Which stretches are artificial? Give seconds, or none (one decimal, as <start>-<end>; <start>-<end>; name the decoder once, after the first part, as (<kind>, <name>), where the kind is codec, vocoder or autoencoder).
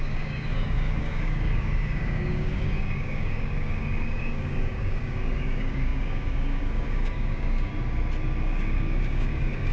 0.0-7.7 (codec, DAC); 8.4-9.7